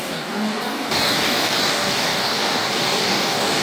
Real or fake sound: fake